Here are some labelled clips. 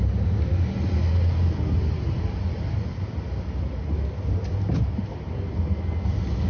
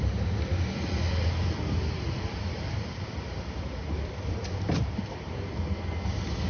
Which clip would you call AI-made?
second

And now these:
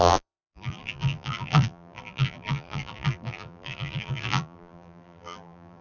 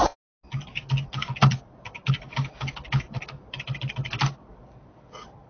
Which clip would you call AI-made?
first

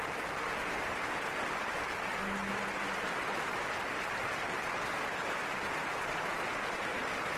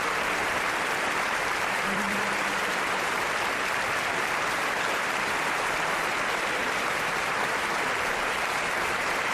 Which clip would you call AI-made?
second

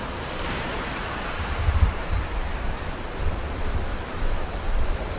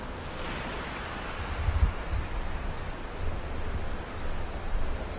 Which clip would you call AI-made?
first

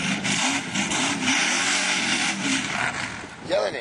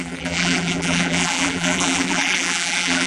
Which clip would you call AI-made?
second